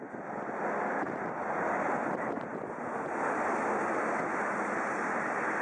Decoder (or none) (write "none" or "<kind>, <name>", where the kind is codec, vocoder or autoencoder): none